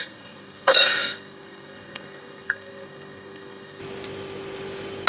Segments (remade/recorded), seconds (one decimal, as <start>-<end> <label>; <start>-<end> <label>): 0.0-3.8 remade; 3.8-5.1 recorded